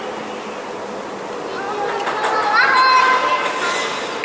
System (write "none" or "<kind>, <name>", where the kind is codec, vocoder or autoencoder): none